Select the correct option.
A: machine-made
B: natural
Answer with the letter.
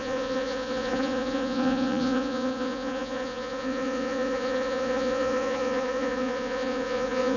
A